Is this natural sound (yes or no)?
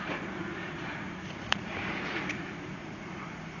no